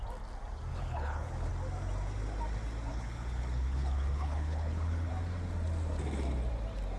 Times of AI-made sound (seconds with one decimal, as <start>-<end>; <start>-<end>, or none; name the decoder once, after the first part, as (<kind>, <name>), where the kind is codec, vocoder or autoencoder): 0.7-1.5 (codec, HILCodec); 2.9-5.1